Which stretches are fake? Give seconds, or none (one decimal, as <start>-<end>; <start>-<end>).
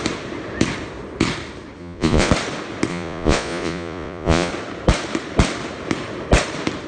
1.8-2.3; 2.9-4.5